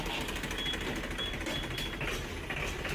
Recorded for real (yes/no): yes